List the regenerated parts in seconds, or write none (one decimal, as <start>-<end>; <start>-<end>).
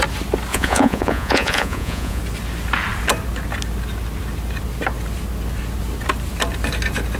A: 0.5-2.2